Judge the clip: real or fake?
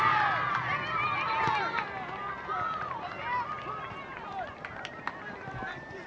real